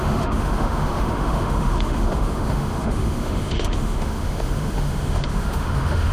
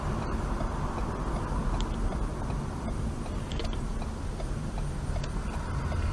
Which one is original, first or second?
second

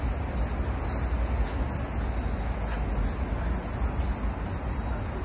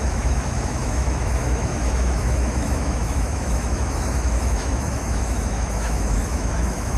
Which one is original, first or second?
first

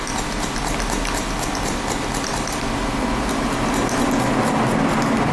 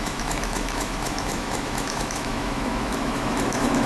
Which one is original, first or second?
first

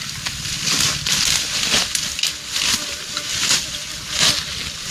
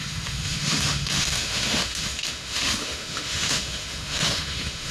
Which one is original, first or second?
first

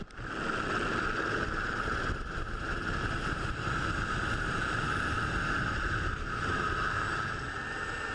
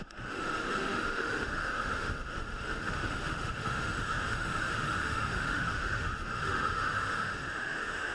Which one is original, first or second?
first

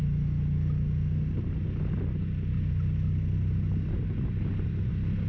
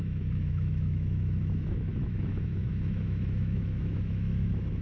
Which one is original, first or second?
first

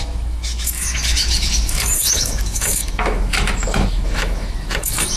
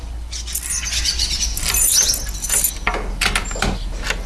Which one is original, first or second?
second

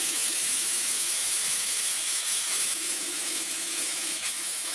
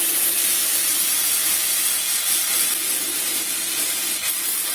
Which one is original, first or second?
second